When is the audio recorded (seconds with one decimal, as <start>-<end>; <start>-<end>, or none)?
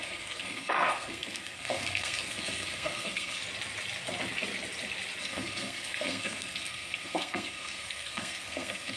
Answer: 3.4-5.2